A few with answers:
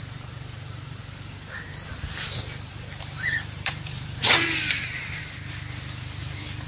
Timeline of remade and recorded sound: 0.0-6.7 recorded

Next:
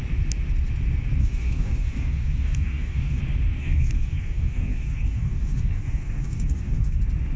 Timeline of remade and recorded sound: 0.0-1.2 recorded; 1.2-3.2 remade; 3.2-3.6 recorded; 3.6-7.0 remade; 7.0-7.4 recorded

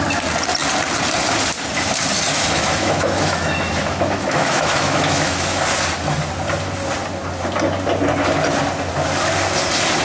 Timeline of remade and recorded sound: 0.0-2.3 recorded; 2.3-5.6 remade; 5.6-10.0 recorded

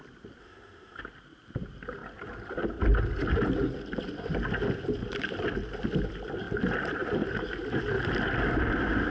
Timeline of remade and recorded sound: 0.0-0.4 recorded; 0.4-1.0 remade; 1.0-9.1 recorded

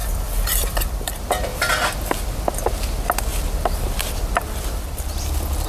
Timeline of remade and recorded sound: 0.0-1.7 remade; 1.7-3.3 recorded; 3.3-5.2 remade; 5.2-5.7 recorded

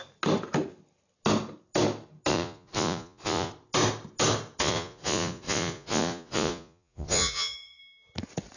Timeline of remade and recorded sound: 0.0-2.3 recorded; 2.3-3.5 remade; 3.5-4.6 recorded; 4.6-7.8 remade; 7.8-8.6 recorded

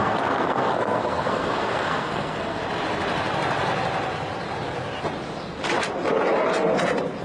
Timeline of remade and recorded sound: 0.0-2.6 remade; 2.6-7.2 recorded